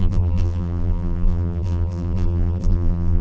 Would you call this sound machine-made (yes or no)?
yes